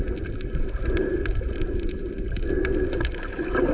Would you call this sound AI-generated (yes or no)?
no